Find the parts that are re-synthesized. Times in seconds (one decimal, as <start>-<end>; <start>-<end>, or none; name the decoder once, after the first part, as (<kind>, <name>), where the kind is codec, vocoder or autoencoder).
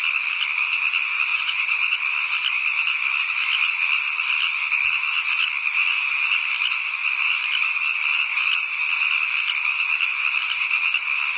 1.3-2.0 (vocoder, Vocos)